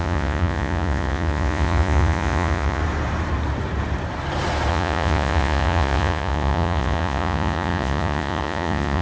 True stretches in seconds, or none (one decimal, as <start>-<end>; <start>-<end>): 2.8-4.7